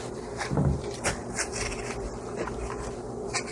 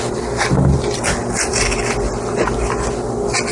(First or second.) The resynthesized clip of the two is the first